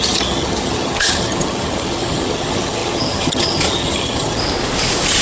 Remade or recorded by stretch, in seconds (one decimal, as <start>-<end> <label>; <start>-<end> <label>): 0.0-4.4 remade; 4.4-5.2 recorded